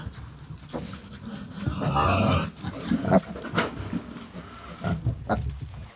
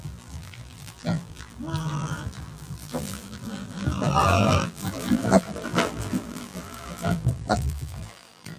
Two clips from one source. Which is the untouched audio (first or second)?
first